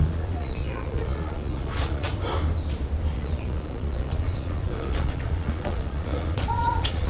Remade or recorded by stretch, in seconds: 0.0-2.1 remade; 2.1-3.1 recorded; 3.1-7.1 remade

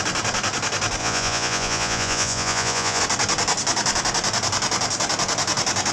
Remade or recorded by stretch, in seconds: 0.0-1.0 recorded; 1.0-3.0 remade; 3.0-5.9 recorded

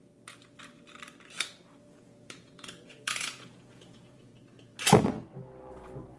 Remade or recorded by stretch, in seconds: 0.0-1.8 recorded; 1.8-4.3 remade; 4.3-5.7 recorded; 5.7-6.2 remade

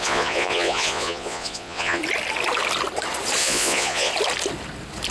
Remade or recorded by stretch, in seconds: 0.0-2.0 remade; 2.0-3.4 recorded; 3.4-4.1 remade; 4.1-5.1 recorded